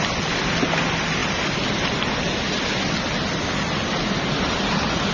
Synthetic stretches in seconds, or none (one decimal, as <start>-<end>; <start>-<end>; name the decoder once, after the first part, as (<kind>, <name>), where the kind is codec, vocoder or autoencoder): none